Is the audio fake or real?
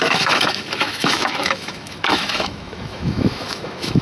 fake